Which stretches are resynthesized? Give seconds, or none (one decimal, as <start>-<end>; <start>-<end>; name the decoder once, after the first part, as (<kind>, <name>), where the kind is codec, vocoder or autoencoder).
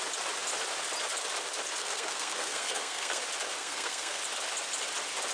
1.8-3.2 (codec, SNAC); 3.6-4.2